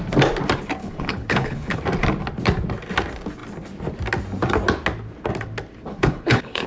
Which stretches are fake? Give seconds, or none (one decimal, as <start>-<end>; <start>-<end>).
0.8-1.8; 5.9-6.7